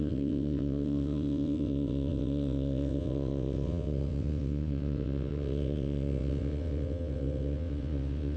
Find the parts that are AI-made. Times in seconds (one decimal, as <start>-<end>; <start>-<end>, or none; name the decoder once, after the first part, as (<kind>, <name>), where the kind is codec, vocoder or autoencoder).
0.0-8.4 (vocoder, WaveNeXt)